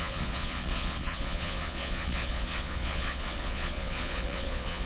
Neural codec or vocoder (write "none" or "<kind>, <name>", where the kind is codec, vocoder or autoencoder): vocoder, Vocos